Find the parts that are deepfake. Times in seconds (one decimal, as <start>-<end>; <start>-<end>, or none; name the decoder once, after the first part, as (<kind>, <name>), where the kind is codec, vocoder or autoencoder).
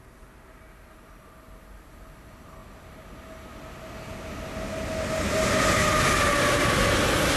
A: none